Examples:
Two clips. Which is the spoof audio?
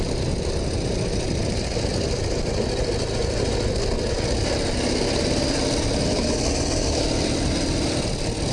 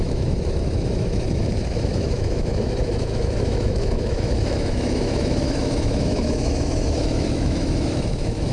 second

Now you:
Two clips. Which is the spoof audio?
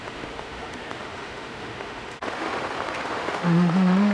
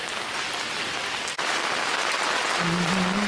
first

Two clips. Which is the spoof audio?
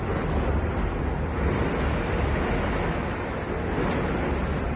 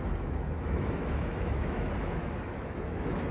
second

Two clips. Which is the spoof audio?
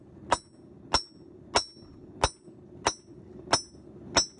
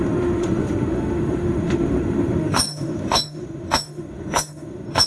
second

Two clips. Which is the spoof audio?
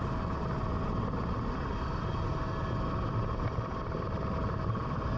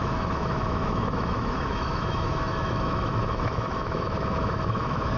second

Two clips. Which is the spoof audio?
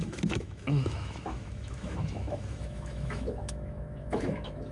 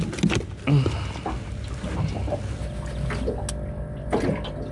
first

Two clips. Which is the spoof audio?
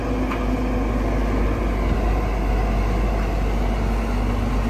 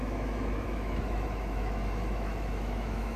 second